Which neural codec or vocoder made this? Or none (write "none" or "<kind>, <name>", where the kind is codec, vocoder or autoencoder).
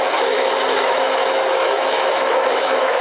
autoencoder, DAC-VAE